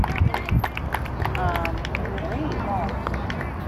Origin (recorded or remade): recorded